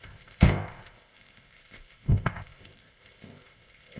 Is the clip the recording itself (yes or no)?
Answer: no